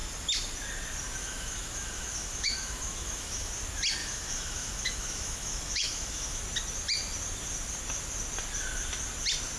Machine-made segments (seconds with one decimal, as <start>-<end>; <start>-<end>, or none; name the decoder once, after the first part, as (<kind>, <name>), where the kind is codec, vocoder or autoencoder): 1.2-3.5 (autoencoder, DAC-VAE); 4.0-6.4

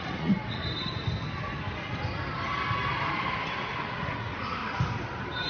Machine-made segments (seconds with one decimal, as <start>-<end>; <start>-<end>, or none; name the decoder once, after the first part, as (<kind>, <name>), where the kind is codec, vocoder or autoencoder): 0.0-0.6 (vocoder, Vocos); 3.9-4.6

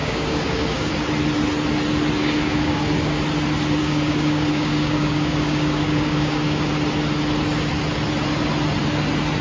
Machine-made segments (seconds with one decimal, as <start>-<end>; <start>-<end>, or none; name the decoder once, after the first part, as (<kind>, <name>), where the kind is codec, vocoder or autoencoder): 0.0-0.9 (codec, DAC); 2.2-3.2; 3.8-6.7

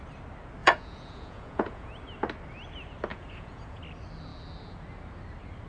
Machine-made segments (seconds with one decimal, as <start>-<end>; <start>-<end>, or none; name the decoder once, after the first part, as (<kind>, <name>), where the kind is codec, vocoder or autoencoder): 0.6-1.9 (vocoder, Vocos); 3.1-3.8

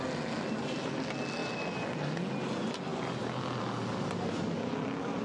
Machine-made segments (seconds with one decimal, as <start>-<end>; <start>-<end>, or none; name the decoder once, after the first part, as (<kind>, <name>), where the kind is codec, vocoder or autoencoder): none